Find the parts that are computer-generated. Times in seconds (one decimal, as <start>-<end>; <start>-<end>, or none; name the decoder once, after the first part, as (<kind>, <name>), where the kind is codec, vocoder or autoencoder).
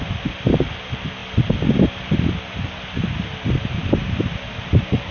1.2-4.3 (vocoder, BigVGAN v2)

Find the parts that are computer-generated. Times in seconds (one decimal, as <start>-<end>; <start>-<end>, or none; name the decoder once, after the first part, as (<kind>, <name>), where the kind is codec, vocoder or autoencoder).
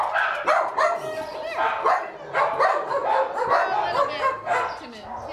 none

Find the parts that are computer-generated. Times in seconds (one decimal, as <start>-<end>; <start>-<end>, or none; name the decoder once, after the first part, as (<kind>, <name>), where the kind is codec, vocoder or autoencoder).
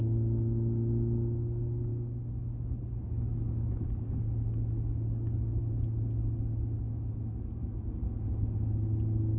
none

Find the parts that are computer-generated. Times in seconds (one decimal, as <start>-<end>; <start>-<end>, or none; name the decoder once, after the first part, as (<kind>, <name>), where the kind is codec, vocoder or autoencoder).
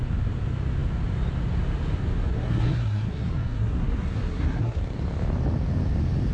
2.3-4.8 (codec, SNAC)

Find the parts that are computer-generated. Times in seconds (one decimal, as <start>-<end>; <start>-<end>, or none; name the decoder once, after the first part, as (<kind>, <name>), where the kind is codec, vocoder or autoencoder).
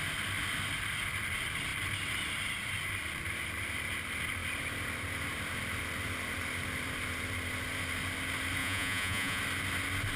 8.6-9.4 (vocoder, Vocos)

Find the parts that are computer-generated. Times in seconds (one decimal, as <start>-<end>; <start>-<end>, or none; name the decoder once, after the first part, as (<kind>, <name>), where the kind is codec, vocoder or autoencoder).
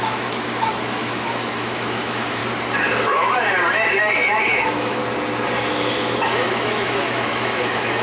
0.0-2.4 (autoencoder, DAC-VAE); 4.4-5.0; 5.7-8.0